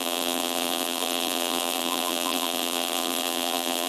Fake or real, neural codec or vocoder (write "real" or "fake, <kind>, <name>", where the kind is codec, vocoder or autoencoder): fake, vocoder, BigVGAN v2